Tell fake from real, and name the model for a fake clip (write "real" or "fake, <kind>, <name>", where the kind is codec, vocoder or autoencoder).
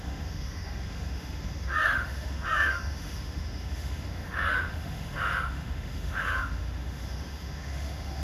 fake, autoencoder, DAC-VAE